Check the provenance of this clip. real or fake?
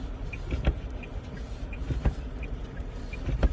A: real